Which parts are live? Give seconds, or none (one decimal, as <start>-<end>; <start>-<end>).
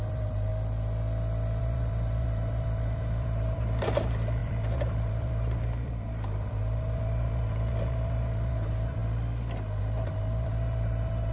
0.5-1.6; 9.0-9.8